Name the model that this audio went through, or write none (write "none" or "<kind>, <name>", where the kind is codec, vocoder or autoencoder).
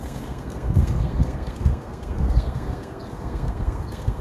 codec, SNAC